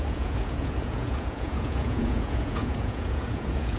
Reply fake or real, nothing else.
fake